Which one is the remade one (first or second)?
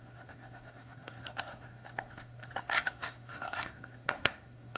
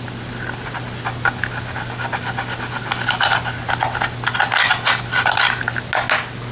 first